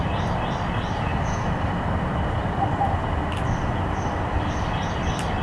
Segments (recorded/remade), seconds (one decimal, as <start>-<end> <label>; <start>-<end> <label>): 0.0-5.4 recorded